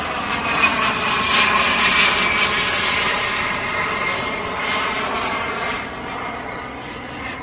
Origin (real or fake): real